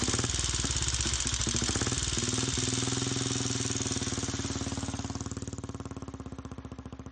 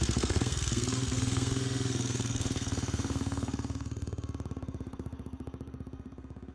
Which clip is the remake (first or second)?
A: second